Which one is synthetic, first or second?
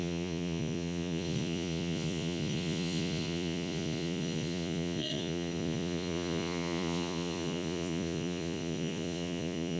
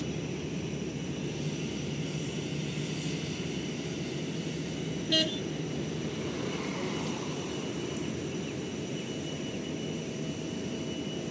first